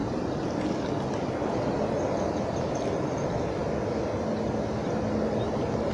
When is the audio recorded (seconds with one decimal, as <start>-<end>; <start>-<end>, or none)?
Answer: 0.0-5.9